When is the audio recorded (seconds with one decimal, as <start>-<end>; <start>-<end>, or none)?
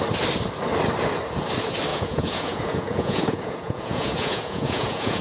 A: 0.0-1.9